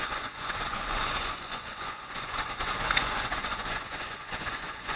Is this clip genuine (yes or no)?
no